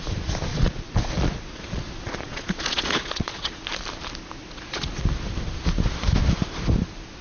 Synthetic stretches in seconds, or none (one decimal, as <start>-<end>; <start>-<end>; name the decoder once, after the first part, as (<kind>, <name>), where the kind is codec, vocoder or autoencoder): 0.5-3.6 (vocoder, Vocos); 4.4-5.0